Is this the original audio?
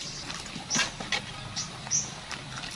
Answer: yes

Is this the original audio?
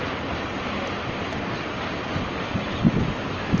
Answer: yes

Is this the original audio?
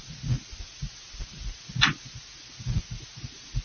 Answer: yes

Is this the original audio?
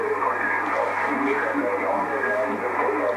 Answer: yes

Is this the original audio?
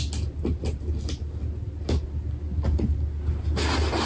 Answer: yes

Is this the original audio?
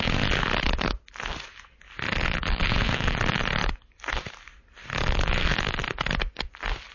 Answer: yes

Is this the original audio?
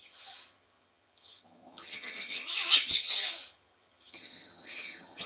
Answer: no